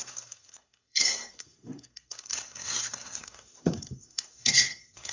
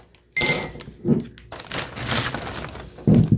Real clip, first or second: second